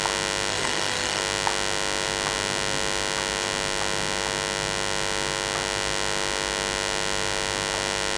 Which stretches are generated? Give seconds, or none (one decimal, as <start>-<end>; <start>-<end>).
0.5-1.2